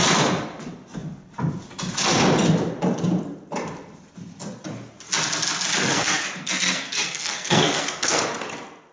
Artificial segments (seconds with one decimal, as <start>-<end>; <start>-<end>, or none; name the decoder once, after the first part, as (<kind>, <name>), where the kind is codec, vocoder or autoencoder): 5.8-8.2 (codec, SNAC)